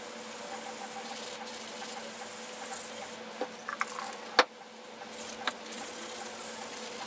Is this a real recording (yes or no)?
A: yes